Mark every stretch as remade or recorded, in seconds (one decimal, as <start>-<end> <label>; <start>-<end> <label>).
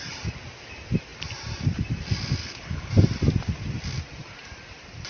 0.0-2.4 recorded; 2.4-2.9 remade; 2.9-5.1 recorded